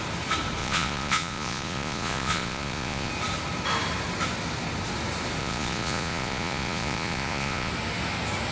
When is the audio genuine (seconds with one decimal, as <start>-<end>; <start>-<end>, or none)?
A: 0.0-0.6; 3.1-5.4; 7.7-8.5